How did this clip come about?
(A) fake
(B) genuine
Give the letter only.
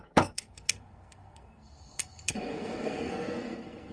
A